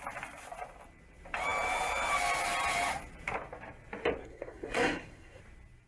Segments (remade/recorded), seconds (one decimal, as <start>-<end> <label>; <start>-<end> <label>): 0.0-4.2 recorded; 4.2-5.4 remade; 5.4-5.9 recorded